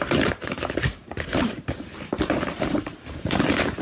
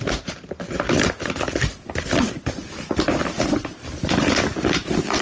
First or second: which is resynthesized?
first